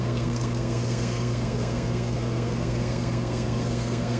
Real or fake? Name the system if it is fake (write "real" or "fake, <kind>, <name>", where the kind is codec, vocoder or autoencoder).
fake, codec, SNAC